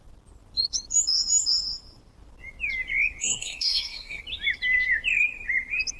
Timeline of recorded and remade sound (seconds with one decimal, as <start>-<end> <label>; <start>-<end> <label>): 0.0-3.2 recorded; 3.2-4.2 remade; 4.2-6.0 recorded